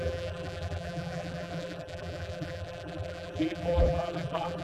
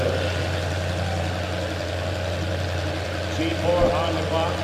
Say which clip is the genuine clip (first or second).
second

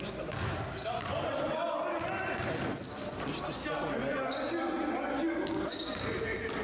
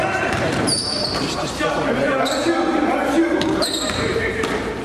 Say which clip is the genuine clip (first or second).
first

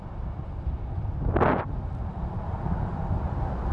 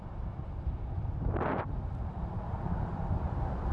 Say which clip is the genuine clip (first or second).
first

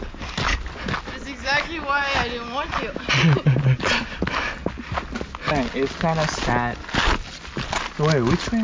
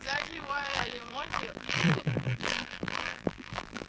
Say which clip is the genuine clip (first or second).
first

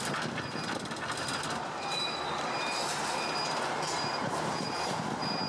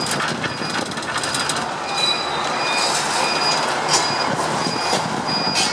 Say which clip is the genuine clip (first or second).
second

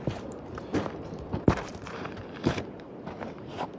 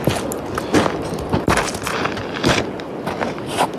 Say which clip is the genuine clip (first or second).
second